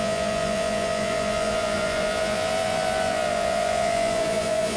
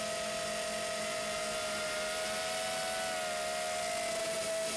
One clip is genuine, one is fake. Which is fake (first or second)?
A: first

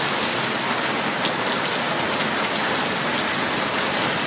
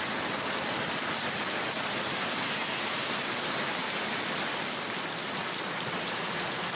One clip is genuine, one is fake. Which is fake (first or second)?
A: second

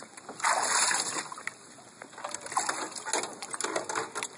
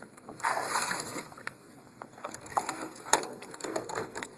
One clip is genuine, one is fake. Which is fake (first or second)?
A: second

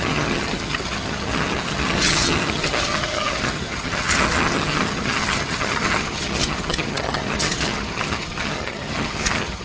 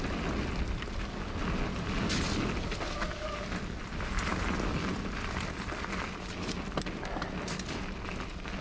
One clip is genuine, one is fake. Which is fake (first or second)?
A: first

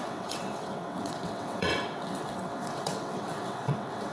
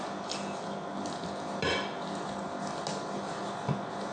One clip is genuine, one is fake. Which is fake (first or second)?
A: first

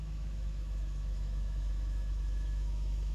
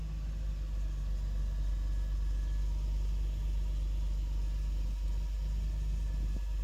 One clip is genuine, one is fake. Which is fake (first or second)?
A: first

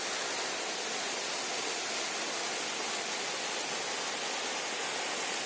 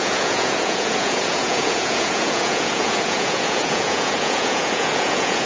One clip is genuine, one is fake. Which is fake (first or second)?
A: second